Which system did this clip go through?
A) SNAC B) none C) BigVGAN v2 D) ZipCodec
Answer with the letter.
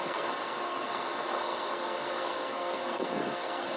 A